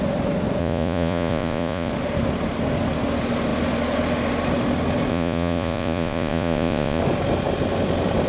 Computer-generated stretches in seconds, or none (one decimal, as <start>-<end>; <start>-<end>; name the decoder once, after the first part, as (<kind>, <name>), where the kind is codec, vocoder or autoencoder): 0.6-1.9 (vocoder, Vocos); 5.1-7.0

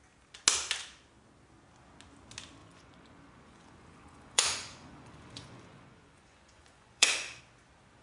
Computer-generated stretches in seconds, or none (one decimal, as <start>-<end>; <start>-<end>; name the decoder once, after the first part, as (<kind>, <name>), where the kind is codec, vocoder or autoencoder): 2.6-7.4 (vocoder, Vocos)

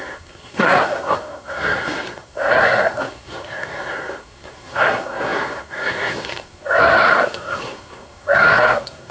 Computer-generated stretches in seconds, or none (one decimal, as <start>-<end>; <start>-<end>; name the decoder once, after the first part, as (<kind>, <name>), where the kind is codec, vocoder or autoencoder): 0.0-9.1 (codec, SNAC)

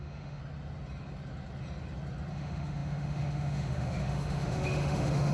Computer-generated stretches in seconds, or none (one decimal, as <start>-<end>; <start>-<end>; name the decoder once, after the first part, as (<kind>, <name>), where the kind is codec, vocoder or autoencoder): 0.0-0.4 (autoencoder, DAC-VAE); 2.3-5.3